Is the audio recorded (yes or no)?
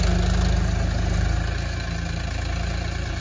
yes